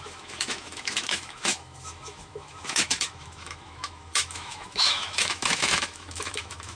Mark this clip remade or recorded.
remade